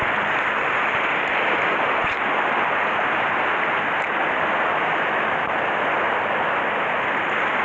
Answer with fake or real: real